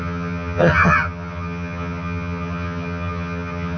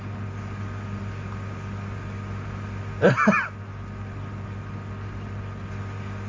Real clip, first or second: second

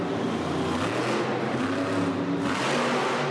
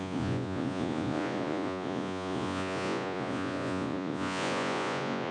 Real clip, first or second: first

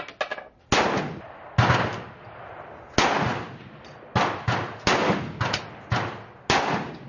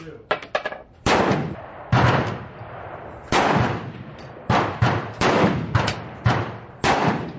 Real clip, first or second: first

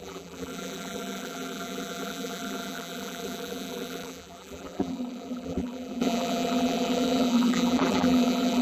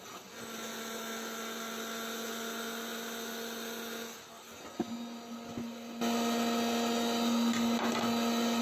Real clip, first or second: second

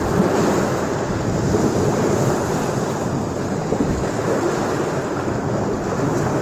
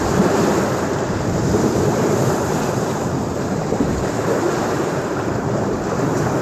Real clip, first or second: first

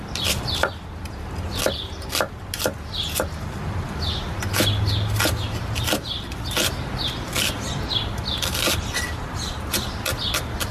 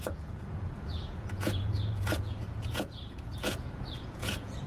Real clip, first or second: first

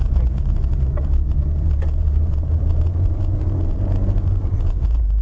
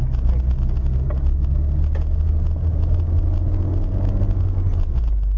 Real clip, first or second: second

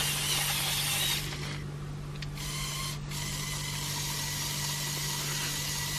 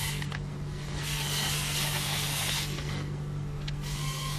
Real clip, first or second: first